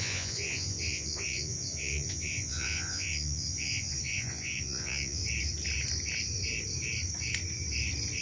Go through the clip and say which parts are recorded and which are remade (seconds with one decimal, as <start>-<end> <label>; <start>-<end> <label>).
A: 0.0-5.2 remade; 5.2-8.2 recorded